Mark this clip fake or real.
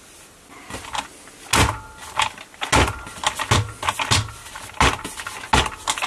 real